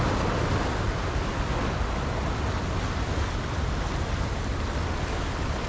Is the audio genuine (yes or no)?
yes